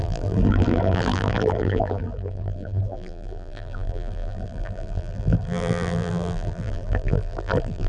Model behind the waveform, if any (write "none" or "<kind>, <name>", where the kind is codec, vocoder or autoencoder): vocoder, BigVGAN v2